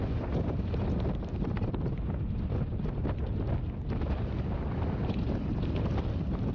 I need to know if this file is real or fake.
real